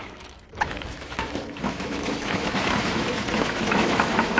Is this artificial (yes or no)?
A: yes